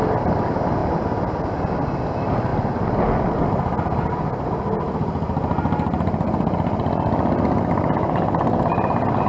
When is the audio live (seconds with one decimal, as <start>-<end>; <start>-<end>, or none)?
0.0-9.3